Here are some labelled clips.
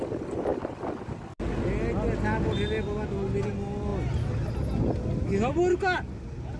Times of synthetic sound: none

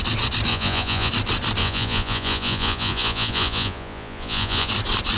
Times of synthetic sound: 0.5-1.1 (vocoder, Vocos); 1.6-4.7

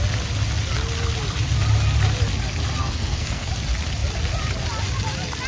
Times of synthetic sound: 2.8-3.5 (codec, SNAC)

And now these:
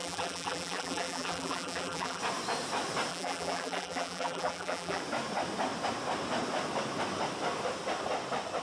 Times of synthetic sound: 0.0-2.2 (vocoder, BigVGAN v2); 3.1-5.0

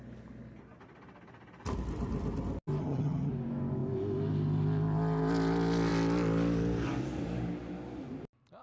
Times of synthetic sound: 2.8-3.3 (vocoder, HiFi-GAN)